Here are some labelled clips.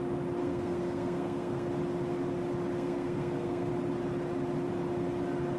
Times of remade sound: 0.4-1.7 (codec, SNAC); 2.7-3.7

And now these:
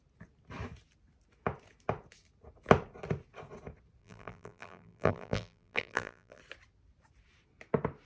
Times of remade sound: 4.0-6.4 (vocoder, BigVGAN v2)

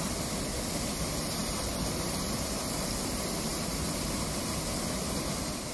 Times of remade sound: 1.4-3.0 (vocoder, BigVGAN v2)

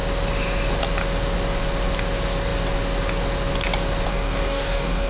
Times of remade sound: 4.1-5.1 (codec, DAC)

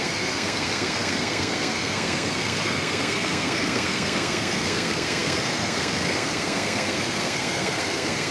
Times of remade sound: 0.0-8.3 (codec, SNAC)

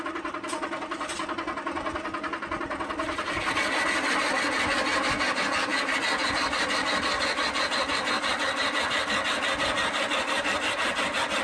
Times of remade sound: none

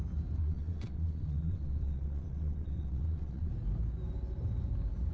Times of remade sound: 0.4-3.5 (vocoder, WaveNeXt)

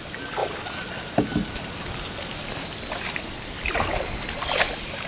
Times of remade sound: none